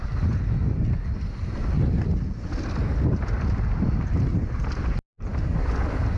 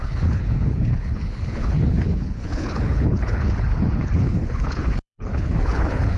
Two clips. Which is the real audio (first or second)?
first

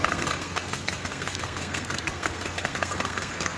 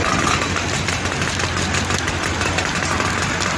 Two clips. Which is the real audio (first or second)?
second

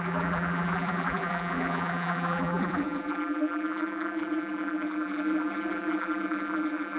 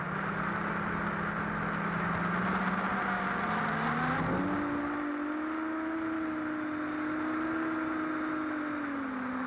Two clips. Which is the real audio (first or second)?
second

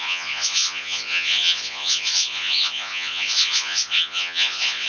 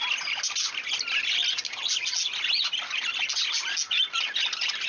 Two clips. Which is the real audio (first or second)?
second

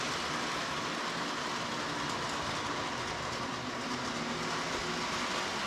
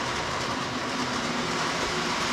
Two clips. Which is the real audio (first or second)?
first